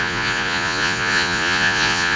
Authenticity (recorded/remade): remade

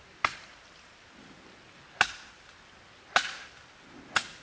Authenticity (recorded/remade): recorded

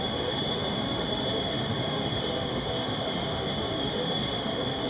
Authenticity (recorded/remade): remade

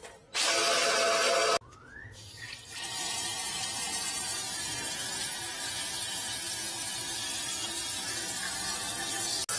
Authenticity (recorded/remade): recorded